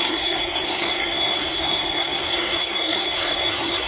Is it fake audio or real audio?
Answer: fake